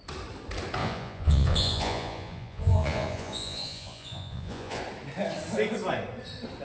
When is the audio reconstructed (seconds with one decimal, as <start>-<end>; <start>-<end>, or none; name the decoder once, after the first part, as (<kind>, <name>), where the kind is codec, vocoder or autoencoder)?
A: 0.8-4.8 (vocoder, Vocos)